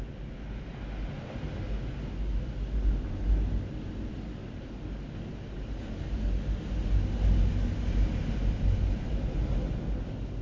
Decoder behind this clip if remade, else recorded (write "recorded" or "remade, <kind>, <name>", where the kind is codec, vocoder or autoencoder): recorded